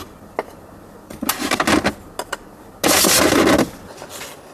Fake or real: real